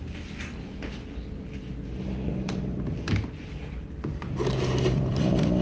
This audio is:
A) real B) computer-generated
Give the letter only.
A